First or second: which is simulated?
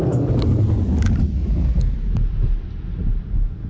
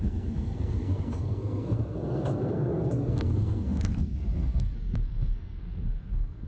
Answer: second